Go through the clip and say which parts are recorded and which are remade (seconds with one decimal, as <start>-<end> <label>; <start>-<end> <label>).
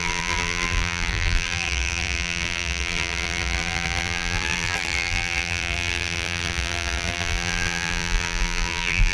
0.0-9.1 remade